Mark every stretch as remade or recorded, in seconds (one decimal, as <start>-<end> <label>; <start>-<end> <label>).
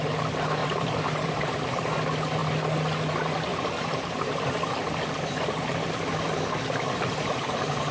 0.0-0.6 recorded; 0.6-1.9 remade; 1.9-3.5 recorded; 3.5-4.4 remade; 4.4-7.9 recorded